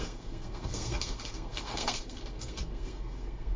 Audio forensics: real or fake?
fake